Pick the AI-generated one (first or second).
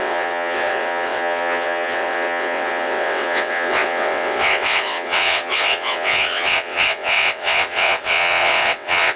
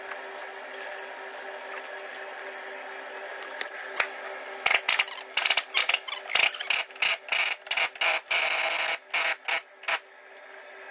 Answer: first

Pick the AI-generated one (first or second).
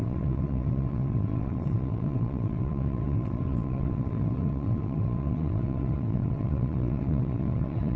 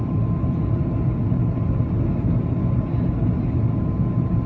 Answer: first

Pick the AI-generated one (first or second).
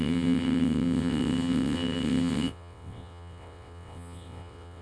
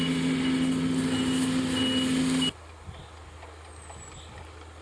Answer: first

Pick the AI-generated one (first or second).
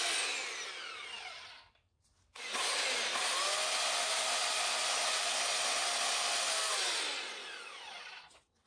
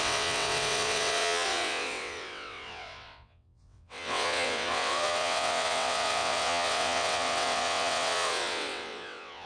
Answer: second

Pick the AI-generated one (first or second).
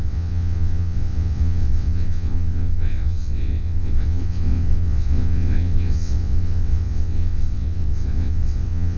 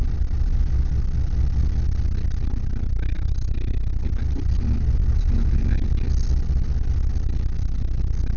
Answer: first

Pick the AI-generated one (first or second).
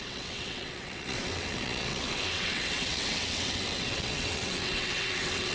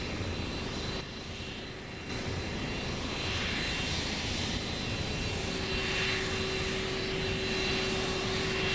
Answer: first